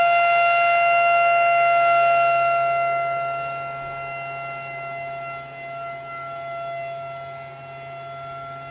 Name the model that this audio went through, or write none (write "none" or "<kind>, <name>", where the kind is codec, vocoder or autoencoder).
none